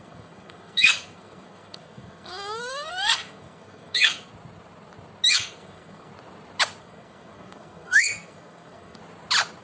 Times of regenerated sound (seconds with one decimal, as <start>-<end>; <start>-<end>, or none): 0.0-4.3; 5.3-6.1; 6.8-9.0